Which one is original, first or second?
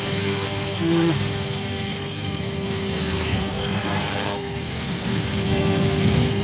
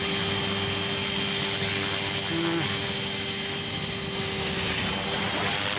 second